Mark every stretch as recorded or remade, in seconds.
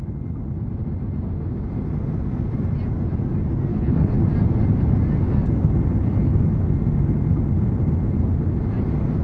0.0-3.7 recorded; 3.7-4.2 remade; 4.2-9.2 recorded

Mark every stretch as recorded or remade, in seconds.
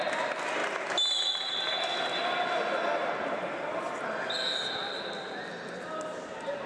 0.0-6.7 recorded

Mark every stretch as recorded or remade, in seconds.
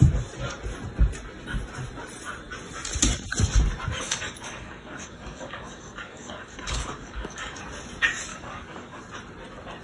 0.0-3.9 recorded; 3.9-7.6 remade; 7.6-8.3 recorded; 8.3-9.0 remade; 9.0-9.8 recorded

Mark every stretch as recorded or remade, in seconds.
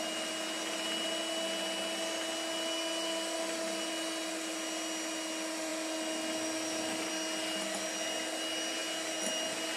0.0-9.8 recorded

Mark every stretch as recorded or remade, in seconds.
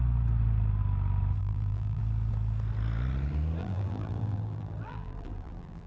0.0-1.4 recorded; 1.4-2.0 remade; 2.0-3.6 recorded; 3.6-5.9 remade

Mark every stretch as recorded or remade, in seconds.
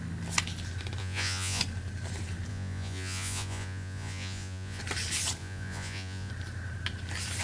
0.0-1.0 recorded; 1.0-1.6 remade; 1.6-2.5 recorded; 2.5-4.8 remade; 4.8-5.4 recorded; 5.4-6.3 remade; 6.3-7.4 recorded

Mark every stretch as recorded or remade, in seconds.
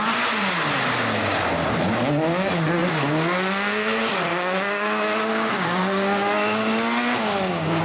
0.0-4.3 recorded; 4.3-7.8 remade